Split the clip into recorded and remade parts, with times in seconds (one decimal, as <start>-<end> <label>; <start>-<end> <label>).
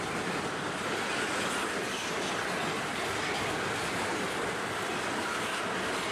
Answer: 0.0-6.1 recorded